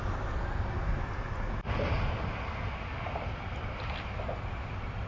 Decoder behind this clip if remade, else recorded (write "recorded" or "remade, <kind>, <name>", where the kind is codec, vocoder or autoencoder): recorded